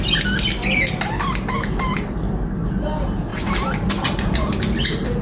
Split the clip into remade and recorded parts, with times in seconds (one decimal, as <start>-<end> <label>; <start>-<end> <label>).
0.0-3.3 recorded; 3.3-4.1 remade; 4.1-5.2 recorded